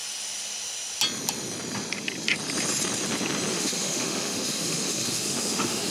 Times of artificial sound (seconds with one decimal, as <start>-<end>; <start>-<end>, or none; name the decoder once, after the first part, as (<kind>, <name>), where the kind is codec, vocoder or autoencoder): 3.5-5.9 (autoencoder, DAC-VAE)